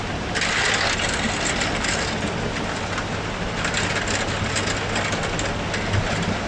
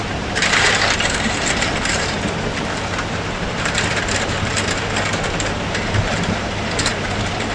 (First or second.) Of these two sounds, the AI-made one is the second